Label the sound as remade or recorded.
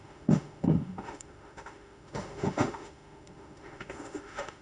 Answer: remade